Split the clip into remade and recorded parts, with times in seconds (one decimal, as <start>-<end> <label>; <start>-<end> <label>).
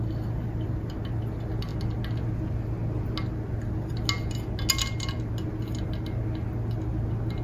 0.0-7.4 recorded